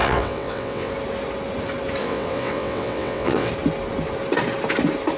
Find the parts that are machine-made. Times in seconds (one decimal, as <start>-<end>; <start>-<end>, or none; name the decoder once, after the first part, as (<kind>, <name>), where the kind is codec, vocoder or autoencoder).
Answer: 0.0-0.9 (vocoder, WaveNeXt); 2.0-3.5